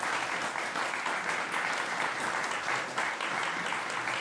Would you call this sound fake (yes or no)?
no